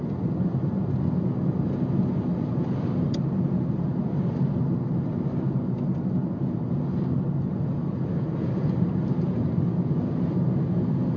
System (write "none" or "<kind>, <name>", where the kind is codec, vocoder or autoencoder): none